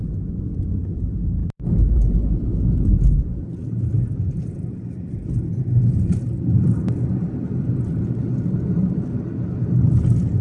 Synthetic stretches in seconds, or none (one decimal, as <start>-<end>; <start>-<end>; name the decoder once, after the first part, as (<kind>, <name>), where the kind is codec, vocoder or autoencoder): none